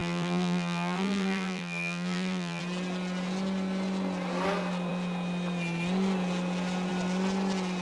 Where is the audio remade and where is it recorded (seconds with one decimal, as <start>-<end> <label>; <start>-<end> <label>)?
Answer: 0.0-2.6 remade; 2.6-7.8 recorded